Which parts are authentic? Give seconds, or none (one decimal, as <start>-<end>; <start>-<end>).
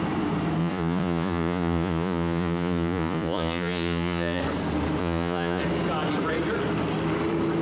0.0-0.6; 4.4-5.0; 5.6-7.6